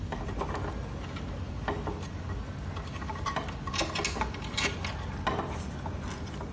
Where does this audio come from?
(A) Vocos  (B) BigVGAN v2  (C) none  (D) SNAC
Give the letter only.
C